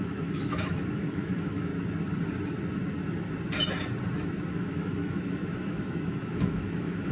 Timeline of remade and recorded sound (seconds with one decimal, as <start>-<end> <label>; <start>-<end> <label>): 0.0-1.7 remade; 1.7-4.5 recorded; 4.5-7.1 remade